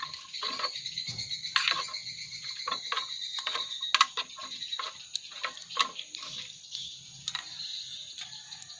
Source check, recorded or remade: recorded